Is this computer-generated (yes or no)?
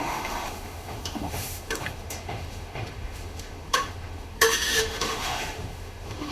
yes